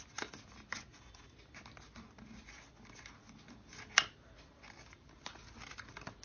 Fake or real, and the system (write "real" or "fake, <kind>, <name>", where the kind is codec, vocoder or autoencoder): real